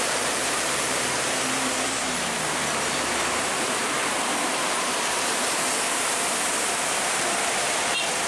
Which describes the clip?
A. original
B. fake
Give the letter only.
B